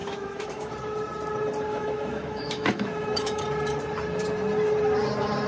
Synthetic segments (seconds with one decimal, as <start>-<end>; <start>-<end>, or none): 0.0-0.7; 1.7-3.4